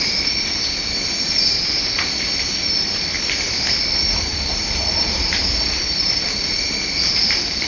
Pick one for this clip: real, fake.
fake